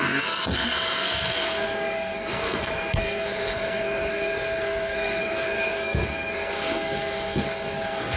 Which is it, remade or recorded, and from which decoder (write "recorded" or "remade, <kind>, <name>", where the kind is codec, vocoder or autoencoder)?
remade, codec, SNAC